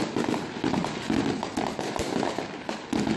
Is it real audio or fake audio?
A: real